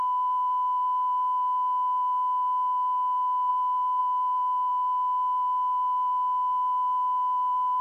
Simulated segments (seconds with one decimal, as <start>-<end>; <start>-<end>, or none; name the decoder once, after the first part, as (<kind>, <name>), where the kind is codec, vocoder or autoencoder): none